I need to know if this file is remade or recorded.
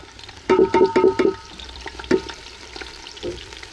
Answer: remade